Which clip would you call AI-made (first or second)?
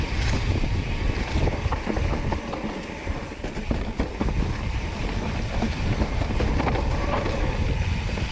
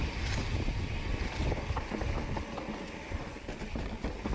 first